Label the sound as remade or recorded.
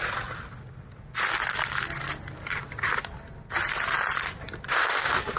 recorded